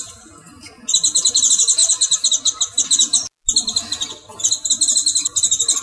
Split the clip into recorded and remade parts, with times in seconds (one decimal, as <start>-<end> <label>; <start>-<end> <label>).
0.0-5.8 recorded